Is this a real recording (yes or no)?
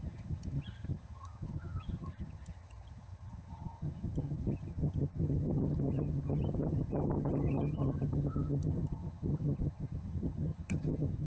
no